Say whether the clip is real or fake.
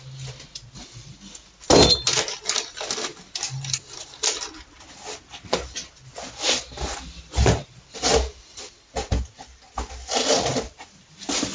real